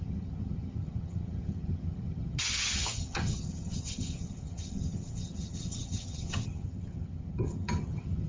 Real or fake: fake